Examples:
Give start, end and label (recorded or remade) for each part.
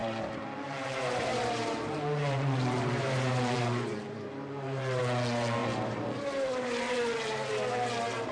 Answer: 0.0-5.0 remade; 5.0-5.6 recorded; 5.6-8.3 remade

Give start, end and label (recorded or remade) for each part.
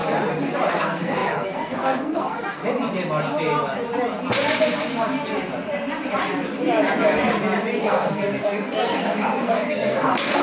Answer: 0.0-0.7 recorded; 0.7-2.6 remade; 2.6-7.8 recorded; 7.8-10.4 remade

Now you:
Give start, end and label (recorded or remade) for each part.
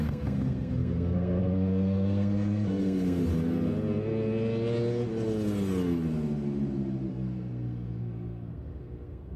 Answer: 0.0-3.2 remade; 3.2-7.1 recorded; 7.1-9.4 remade